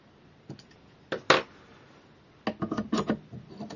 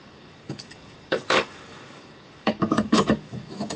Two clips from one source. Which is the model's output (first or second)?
second